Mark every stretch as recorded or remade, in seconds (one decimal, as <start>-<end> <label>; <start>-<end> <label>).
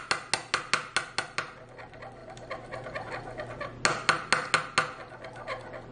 0.0-2.2 recorded; 2.2-3.1 remade; 3.1-5.9 recorded